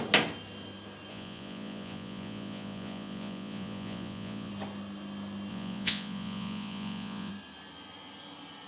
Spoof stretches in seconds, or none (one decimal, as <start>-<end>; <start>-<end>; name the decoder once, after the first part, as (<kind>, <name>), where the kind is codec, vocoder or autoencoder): 1.1-4.5 (vocoder, Vocos); 5.5-7.3